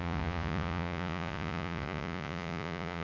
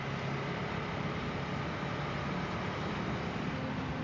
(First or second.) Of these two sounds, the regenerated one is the first